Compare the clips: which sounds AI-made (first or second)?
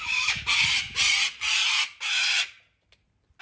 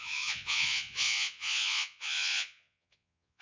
second